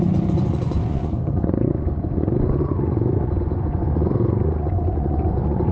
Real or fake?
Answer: fake